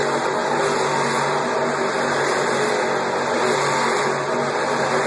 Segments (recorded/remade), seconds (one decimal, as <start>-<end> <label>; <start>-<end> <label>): 0.0-5.1 recorded

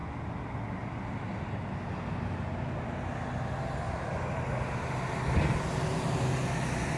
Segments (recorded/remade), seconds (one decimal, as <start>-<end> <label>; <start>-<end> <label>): 0.0-7.0 recorded

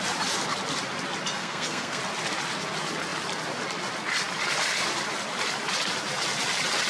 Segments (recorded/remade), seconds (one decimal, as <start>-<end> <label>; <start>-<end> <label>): 0.0-1.4 recorded; 1.4-2.0 remade; 2.0-6.9 recorded